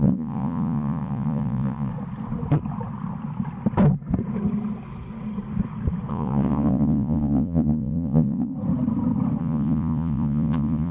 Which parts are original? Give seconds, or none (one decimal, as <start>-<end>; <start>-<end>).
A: 1.9-6.1; 8.5-9.4